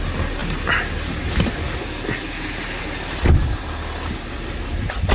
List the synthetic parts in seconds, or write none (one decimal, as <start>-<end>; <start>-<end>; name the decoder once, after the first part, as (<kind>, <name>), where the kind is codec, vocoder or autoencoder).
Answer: none